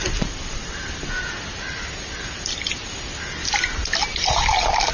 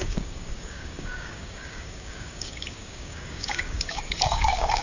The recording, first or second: first